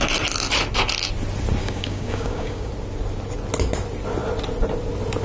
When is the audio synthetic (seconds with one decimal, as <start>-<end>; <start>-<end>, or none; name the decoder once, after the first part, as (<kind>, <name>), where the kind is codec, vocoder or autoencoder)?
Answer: 1.6-2.7 (codec, DAC)

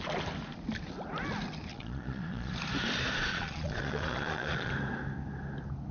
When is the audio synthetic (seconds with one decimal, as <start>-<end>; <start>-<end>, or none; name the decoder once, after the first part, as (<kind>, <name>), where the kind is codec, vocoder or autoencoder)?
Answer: 1.7-2.5 (vocoder, Vocos); 3.3-4.7

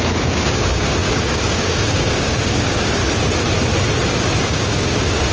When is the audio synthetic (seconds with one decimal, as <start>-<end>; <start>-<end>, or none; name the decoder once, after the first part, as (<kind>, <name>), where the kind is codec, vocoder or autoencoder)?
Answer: 0.0-3.0 (codec, DAC); 4.4-5.3

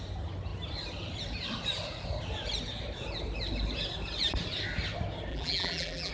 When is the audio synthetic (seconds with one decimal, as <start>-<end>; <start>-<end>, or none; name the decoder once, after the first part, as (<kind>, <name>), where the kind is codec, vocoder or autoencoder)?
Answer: 5.3-6.1 (vocoder, BigVGAN v2)

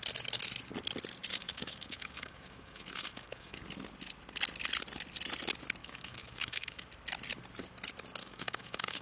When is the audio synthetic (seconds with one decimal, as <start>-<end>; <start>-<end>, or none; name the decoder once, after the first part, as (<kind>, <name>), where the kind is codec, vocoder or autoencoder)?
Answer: 1.3-3.6 (autoencoder, DAC-VAE); 5.8-6.9; 8.2-9.0

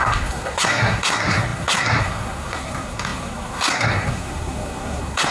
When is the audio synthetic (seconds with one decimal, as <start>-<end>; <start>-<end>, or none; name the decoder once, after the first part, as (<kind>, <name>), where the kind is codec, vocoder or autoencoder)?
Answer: 0.0-5.3 (codec, SNAC)